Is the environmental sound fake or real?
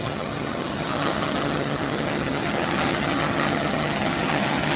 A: fake